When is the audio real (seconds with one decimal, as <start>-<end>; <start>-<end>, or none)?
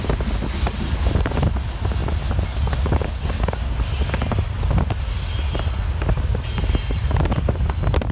0.0-8.1